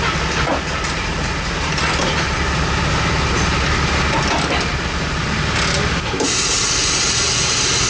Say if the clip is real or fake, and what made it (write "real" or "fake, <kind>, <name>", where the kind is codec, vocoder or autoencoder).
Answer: real